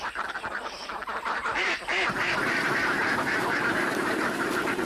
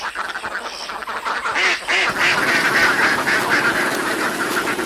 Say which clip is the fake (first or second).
first